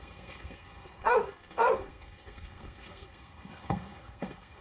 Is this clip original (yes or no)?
no